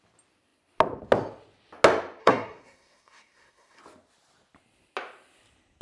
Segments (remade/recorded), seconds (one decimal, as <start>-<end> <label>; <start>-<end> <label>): 0.0-2.2 recorded; 2.2-3.8 remade; 3.8-5.8 recorded